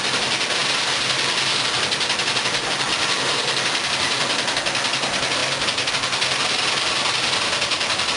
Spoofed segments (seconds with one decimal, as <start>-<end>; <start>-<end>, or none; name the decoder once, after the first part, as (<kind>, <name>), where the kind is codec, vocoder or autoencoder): none